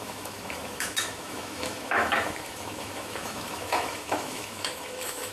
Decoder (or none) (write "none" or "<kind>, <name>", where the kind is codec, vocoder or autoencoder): autoencoder, DAC-VAE